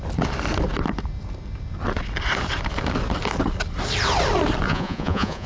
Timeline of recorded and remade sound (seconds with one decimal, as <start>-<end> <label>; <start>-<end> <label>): 0.0-4.7 recorded; 4.7-5.5 remade